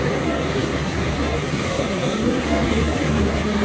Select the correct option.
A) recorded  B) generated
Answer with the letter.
B